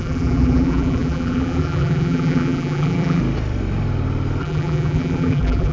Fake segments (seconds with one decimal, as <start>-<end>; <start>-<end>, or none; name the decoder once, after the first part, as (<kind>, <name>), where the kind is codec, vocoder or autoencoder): 0.0-3.2 (vocoder, BigVGAN v2); 4.4-5.7